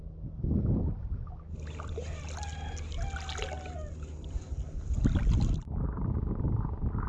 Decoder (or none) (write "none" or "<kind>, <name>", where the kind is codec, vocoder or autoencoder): none